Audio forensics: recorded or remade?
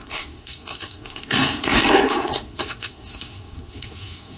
remade